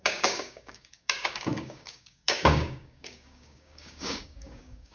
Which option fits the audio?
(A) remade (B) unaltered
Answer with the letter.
A